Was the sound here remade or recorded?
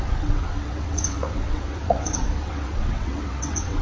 remade